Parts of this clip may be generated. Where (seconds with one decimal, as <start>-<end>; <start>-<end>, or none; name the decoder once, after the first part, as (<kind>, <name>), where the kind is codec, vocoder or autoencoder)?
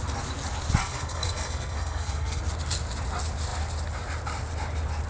0.8-2.4 (codec, SNAC)